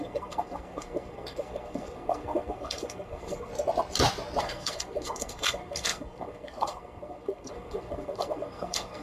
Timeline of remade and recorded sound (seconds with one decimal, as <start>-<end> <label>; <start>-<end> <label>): 0.0-3.5 remade; 3.5-4.4 recorded; 4.4-9.0 remade

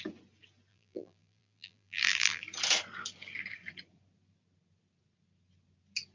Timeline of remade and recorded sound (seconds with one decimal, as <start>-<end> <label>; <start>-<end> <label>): 0.0-0.7 recorded; 0.7-2.4 remade; 2.4-6.1 recorded

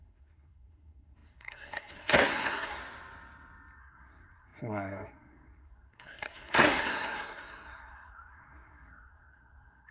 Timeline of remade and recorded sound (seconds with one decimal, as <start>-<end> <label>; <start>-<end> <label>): 0.0-2.8 remade; 2.8-3.8 recorded; 3.8-9.9 remade